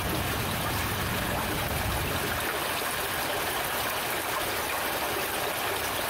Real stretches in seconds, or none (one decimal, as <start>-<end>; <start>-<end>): 0.0-6.1